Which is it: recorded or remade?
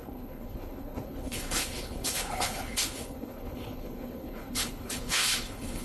remade